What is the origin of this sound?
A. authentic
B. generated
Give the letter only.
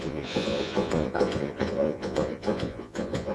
B